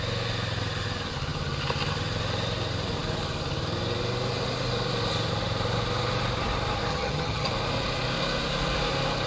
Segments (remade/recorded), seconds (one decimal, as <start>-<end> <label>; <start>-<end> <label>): 0.0-6.9 recorded; 6.9-7.5 remade; 7.5-9.3 recorded